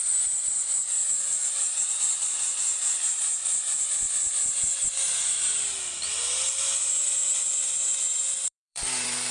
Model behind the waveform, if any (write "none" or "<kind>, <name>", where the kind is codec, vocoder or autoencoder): vocoder, BigVGAN v2